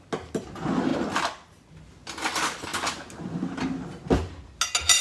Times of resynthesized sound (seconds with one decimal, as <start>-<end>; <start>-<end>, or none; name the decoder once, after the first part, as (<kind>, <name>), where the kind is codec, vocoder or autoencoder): none